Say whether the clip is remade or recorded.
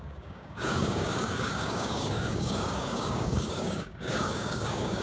remade